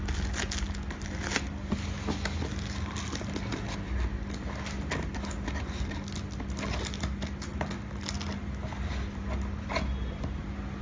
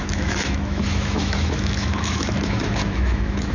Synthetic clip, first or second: second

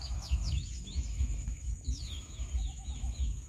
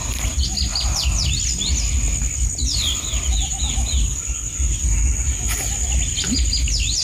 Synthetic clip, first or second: first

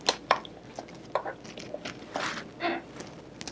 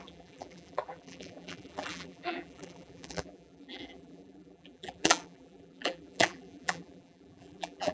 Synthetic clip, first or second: second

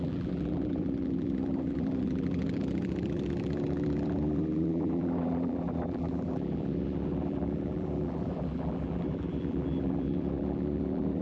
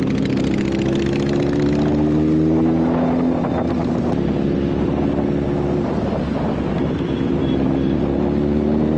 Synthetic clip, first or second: first